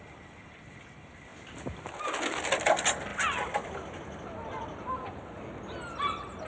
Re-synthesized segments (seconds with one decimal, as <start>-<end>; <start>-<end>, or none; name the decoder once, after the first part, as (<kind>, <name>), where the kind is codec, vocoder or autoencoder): none